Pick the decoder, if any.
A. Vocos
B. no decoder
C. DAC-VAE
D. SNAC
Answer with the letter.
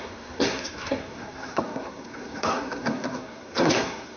D